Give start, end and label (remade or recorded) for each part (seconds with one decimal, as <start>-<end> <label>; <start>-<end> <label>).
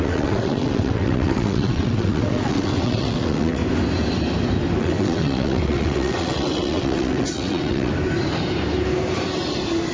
0.0-3.6 remade; 3.6-4.8 recorded; 4.8-7.9 remade; 7.9-9.9 recorded